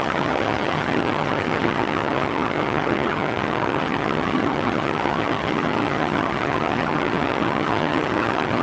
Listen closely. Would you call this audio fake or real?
fake